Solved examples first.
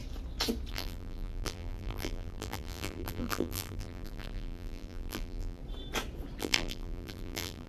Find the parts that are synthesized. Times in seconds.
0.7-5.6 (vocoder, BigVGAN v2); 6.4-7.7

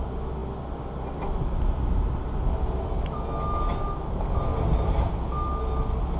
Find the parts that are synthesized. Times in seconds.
4.5-5.1 (vocoder, BigVGAN v2)

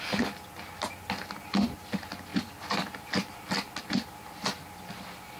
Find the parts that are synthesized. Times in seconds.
2.3-3.4 (vocoder, BigVGAN v2)

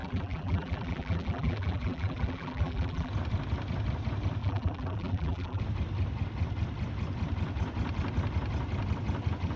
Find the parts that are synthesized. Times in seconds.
0.0-3.1 (vocoder, BigVGAN v2); 4.4-5.6